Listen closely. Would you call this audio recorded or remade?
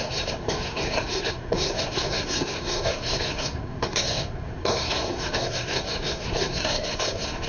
remade